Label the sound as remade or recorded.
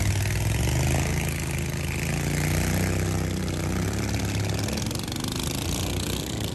recorded